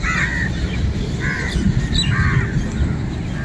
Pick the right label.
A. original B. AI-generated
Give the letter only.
A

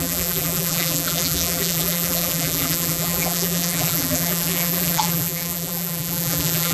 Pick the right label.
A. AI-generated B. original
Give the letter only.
A